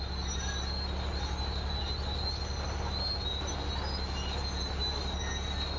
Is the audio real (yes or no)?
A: yes